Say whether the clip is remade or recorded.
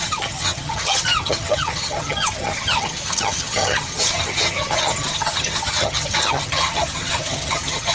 remade